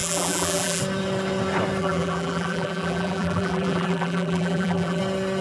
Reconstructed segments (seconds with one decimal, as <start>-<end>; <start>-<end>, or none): 0.0-0.8; 1.8-5.0